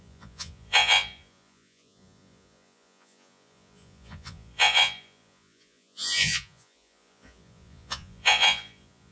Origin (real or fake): fake